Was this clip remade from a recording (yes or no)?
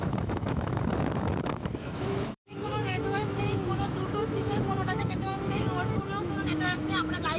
yes